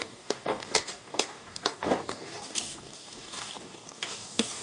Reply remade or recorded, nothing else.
remade